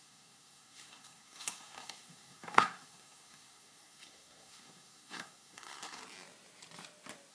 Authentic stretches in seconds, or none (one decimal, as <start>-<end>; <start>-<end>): 6.0-7.3